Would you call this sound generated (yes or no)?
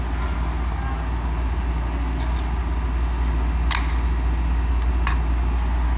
no